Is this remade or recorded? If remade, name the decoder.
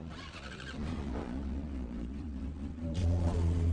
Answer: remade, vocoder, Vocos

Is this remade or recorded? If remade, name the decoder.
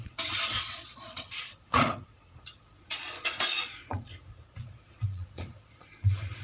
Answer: remade, vocoder, Vocos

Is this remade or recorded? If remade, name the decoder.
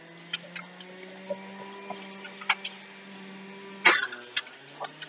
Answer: recorded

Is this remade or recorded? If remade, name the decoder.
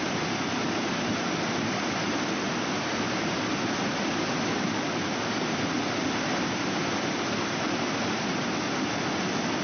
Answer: recorded